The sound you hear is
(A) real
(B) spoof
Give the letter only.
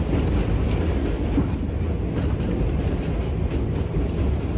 A